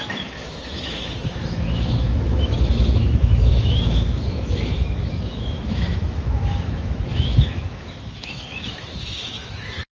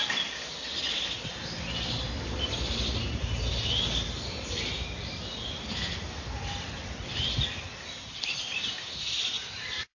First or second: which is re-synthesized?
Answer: first